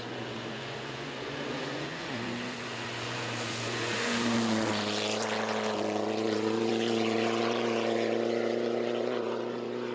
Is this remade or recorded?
remade